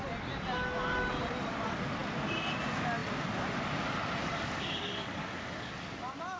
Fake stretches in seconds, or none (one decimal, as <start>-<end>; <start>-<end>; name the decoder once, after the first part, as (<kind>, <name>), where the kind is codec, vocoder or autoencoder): 4.2-6.0 (codec, DAC)